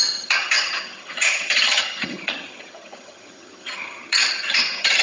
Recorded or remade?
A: remade